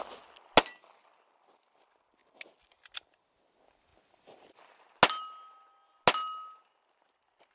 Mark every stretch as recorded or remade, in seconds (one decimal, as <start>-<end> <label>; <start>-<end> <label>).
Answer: 0.0-7.5 recorded